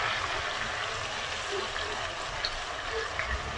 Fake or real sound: real